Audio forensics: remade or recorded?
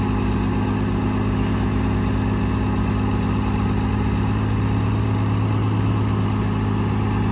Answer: recorded